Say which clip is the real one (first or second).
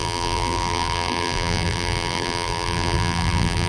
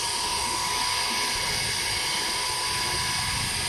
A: second